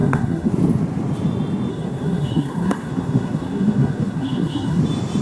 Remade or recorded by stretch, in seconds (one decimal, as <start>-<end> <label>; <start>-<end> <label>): 0.0-0.5 remade; 0.5-1.7 recorded; 1.7-4.8 remade; 4.8-5.2 recorded